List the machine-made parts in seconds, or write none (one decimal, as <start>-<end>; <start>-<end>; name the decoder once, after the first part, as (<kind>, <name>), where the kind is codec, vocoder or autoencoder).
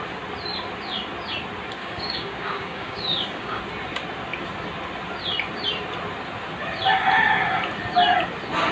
1.8-3.6 (codec, DAC)